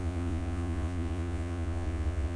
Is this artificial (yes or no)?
yes